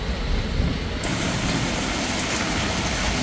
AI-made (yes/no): no